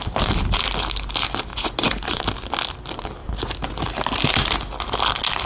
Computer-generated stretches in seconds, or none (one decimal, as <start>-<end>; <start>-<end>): 1.5-2.2